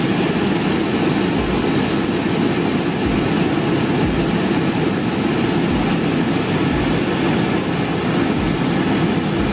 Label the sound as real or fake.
real